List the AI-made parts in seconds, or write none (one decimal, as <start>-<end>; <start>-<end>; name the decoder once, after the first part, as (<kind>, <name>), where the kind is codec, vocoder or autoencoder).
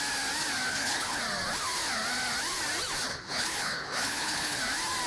0.7-1.2 (codec, HILCodec); 3.1-4.6